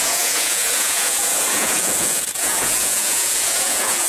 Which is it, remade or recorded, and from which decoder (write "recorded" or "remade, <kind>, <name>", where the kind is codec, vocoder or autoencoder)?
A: remade, vocoder, Vocos